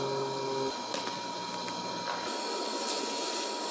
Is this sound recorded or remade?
recorded